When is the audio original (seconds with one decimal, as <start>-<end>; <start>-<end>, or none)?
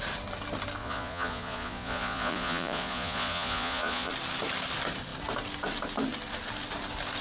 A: 0.0-0.8; 4.1-7.2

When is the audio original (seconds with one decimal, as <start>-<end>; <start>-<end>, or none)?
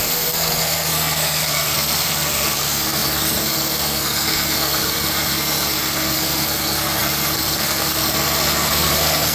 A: none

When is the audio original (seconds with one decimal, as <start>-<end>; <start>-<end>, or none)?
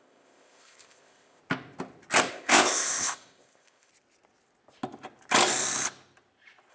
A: 1.4-2.3; 3.9-6.7